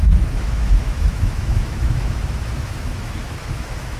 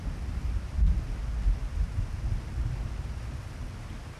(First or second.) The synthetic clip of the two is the first